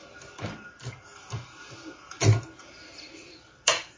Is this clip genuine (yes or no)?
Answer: no